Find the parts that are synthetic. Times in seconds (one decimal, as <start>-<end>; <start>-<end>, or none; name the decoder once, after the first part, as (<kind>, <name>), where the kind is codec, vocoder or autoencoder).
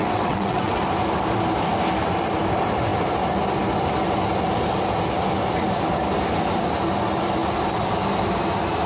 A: 0.0-0.8 (vocoder, WaveNeXt)